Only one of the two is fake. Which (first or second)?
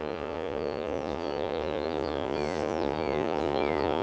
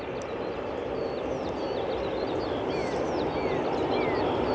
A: first